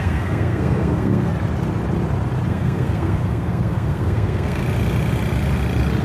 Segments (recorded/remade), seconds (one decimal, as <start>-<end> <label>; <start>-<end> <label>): 0.0-1.3 remade; 1.3-2.5 recorded; 2.5-4.6 remade; 4.6-6.0 recorded